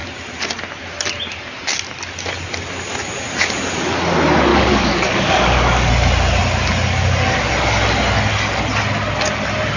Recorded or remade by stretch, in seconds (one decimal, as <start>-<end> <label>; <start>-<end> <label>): 0.0-4.5 recorded; 4.5-5.9 remade; 5.9-9.8 recorded